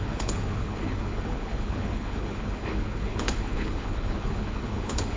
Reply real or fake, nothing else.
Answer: fake